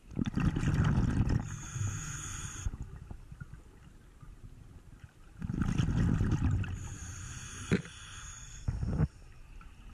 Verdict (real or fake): real